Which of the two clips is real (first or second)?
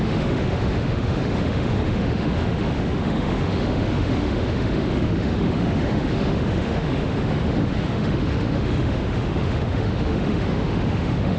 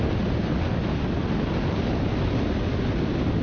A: second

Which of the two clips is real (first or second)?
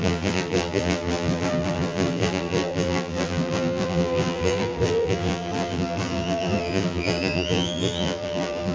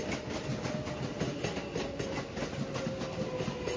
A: second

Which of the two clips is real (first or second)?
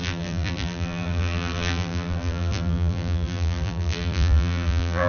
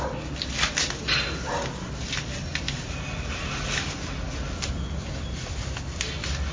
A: second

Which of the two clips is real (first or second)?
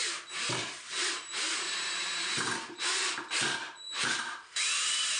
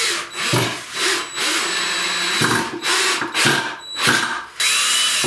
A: second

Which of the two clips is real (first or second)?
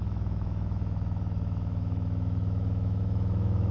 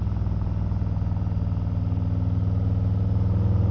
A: second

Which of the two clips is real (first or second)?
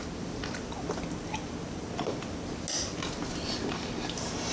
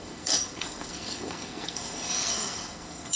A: first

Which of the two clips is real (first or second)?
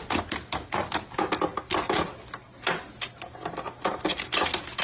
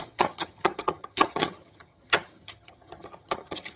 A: first